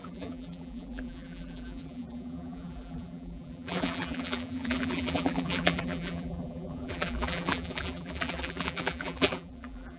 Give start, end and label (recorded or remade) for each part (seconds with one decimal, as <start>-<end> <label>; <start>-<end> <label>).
0.0-10.0 remade